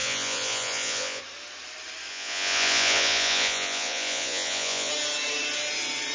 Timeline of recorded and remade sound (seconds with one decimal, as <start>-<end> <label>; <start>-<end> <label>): 0.0-1.2 remade; 1.2-2.1 recorded; 2.1-4.9 remade; 4.9-6.1 recorded